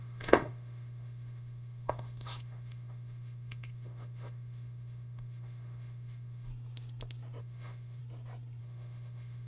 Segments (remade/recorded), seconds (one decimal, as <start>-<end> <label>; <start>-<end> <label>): 0.0-6.5 remade; 6.5-7.4 recorded; 7.4-8.0 remade; 8.0-8.6 recorded; 8.6-9.5 remade